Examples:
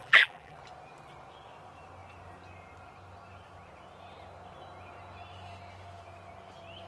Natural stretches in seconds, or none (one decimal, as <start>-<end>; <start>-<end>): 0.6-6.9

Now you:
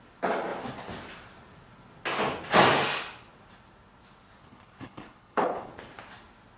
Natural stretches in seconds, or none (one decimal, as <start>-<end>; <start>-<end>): 0.0-4.4; 5.7-6.6

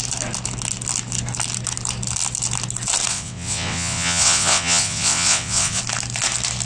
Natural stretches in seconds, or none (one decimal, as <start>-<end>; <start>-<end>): 0.0-3.1; 5.8-6.7

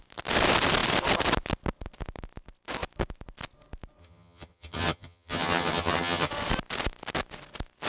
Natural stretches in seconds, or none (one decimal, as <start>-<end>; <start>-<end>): 0.0-4.0; 6.3-7.9

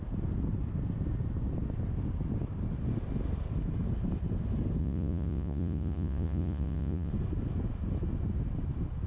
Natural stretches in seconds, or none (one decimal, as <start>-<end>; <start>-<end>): 0.0-4.8; 7.1-9.1

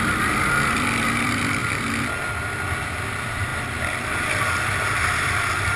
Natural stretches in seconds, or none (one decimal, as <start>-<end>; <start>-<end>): 0.0-5.8